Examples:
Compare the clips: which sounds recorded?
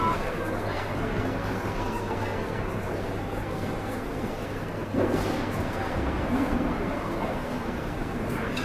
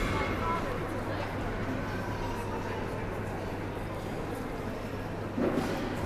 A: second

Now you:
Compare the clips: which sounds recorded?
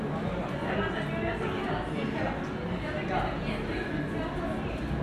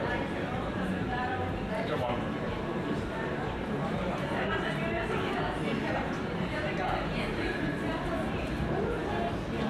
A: first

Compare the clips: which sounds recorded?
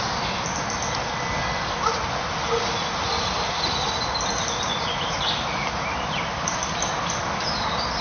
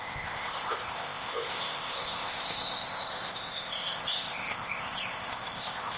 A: first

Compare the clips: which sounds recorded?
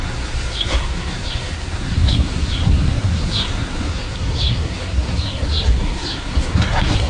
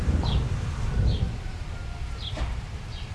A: second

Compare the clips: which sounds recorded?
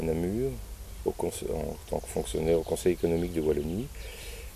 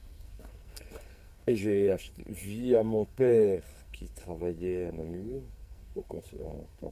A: first